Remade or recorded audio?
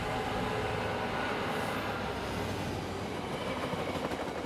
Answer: recorded